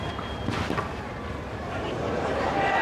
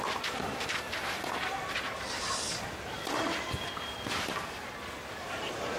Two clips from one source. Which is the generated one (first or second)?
second